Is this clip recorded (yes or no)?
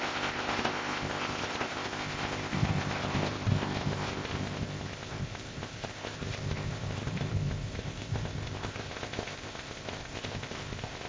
no